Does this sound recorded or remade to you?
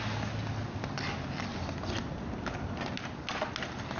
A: recorded